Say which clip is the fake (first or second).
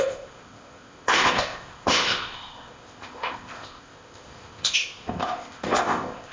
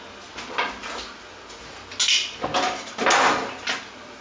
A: first